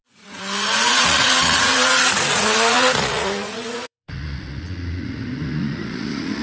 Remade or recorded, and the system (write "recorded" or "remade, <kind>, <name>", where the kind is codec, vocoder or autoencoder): remade, vocoder, Vocos